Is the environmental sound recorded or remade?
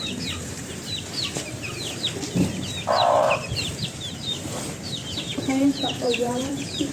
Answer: remade